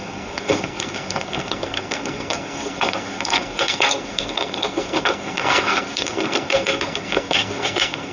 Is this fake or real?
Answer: fake